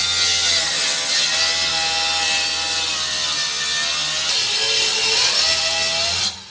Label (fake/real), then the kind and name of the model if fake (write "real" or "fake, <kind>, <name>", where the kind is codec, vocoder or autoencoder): real